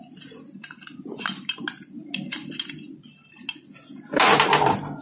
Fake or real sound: real